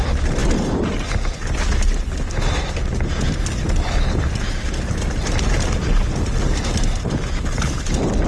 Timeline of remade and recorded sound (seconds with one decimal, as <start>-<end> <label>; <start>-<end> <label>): 0.0-8.3 recorded